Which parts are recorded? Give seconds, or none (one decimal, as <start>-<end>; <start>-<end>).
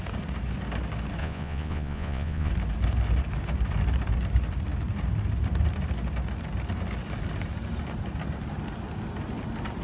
0.0-1.2; 2.5-9.8